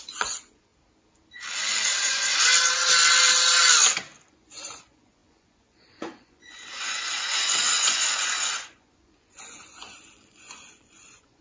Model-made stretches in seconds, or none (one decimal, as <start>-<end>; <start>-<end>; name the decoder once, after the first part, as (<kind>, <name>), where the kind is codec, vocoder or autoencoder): 0.0-0.7 (vocoder, Vocos); 2.0-2.5; 4.3-11.4